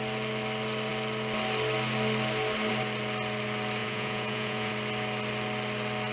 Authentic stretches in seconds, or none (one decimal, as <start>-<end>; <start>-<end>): 0.0-3.8; 4.7-6.1